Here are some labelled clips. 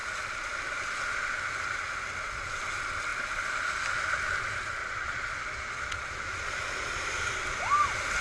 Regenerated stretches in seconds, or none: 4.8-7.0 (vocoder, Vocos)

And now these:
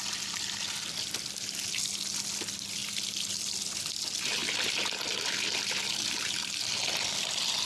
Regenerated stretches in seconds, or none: none

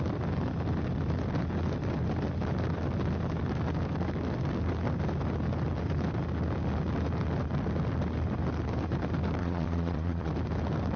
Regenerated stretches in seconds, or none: 9.4-10.3 (vocoder, Vocos)

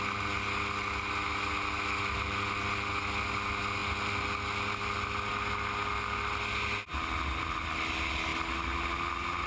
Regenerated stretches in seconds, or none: none

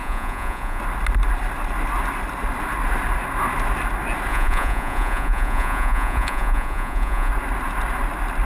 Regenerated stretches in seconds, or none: 0.0-0.8 (vocoder, Vocos); 4.3-7.3

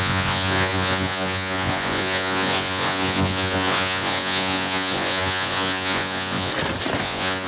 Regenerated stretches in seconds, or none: 0.0-6.5 (vocoder, Vocos); 7.0-7.5

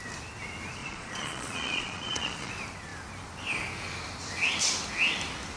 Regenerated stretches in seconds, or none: 0.8-2.5 (vocoder, Vocos)

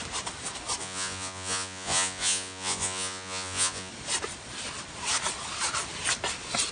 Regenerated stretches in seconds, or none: 0.8-3.9 (vocoder, Vocos)